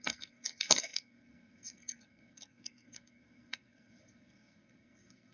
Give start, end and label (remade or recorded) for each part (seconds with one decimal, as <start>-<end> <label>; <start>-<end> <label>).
0.0-5.3 remade